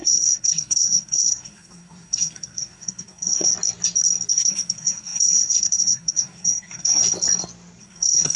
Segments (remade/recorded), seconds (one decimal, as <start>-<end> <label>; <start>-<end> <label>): 0.0-3.5 remade; 3.5-4.3 recorded; 4.3-7.0 remade; 7.0-7.8 recorded; 7.8-8.4 remade